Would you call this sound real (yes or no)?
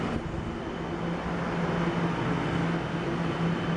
yes